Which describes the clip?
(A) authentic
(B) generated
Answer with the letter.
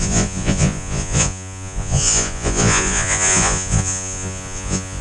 B